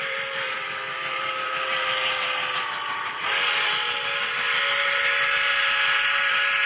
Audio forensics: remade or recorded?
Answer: recorded